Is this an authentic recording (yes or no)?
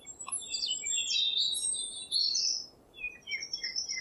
no